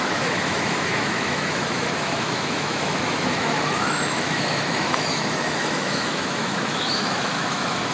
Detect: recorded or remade remade